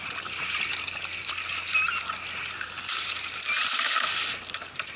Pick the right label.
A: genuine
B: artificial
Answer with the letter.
A